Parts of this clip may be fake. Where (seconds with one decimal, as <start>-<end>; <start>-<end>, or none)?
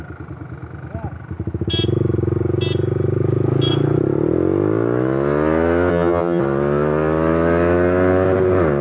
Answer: 5.9-6.4